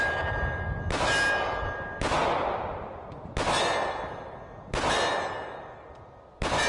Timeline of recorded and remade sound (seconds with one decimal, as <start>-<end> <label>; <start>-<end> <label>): 0.0-6.7 recorded